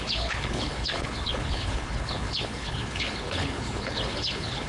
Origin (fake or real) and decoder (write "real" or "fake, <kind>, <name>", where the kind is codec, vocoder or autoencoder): fake, codec, HILCodec